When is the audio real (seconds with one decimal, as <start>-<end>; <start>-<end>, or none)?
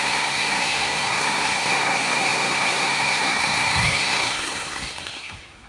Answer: none